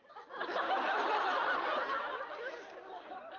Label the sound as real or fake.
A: fake